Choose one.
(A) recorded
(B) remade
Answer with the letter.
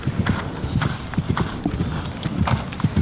A